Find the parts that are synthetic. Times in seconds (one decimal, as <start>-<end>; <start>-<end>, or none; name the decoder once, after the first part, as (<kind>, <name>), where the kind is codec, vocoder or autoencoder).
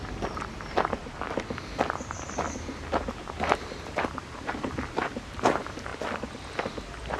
0.0-1.0 (vocoder, BigVGAN v2); 3.2-5.9